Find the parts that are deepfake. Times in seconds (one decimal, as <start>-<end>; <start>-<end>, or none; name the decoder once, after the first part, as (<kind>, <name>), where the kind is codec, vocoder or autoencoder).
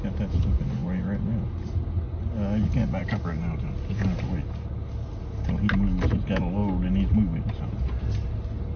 none